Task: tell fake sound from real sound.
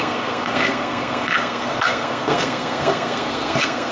fake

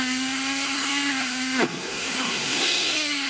fake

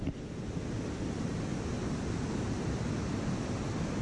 real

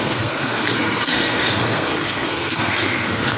fake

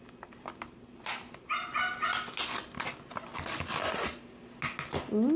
real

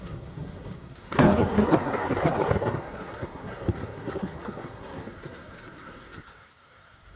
fake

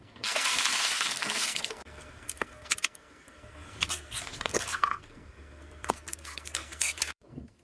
fake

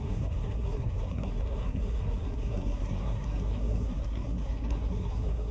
fake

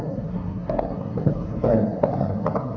fake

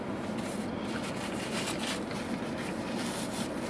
real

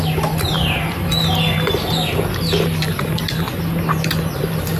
real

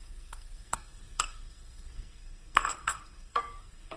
fake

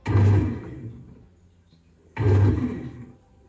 real